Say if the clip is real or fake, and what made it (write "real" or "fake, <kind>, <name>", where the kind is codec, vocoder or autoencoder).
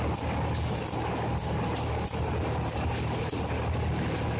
real